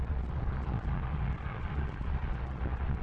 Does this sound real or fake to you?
fake